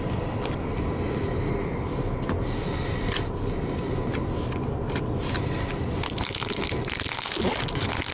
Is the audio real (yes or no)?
yes